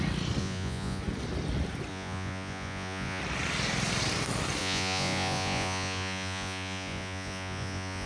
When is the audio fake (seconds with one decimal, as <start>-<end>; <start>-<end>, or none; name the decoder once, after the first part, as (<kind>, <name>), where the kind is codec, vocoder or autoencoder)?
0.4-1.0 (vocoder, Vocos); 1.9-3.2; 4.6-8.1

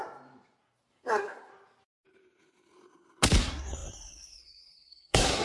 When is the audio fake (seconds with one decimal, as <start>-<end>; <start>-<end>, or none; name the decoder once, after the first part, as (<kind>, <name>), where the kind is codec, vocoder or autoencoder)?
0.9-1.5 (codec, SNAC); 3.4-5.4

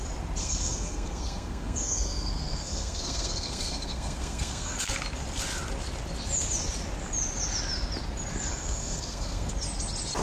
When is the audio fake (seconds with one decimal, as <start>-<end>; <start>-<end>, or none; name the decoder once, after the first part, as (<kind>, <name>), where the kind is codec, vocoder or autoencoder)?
0.4-4.9 (codec, SNAC); 8.5-9.5

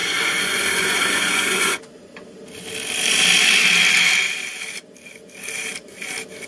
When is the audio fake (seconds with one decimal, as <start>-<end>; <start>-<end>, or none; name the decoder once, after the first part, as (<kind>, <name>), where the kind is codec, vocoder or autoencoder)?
0.0-1.8 (vocoder, Vocos)

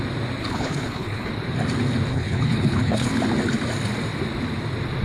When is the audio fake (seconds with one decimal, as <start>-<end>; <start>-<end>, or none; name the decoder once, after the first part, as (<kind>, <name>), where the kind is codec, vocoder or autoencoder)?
0.4-1.3 (codec, HILCodec); 2.1-3.1